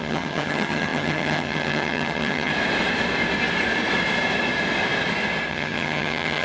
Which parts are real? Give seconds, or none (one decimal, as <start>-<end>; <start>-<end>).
2.5-5.5